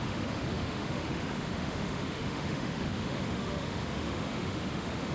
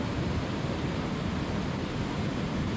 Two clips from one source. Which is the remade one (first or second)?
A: first